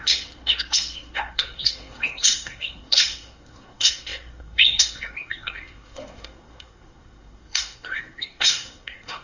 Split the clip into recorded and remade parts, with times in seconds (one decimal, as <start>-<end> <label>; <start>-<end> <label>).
0.0-9.2 remade